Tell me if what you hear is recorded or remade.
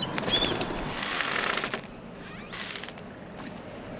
recorded